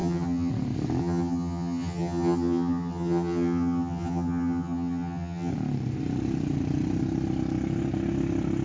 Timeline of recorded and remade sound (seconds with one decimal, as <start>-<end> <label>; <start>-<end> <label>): 0.0-0.5 remade; 0.5-1.0 recorded; 1.0-5.5 remade; 5.5-8.6 recorded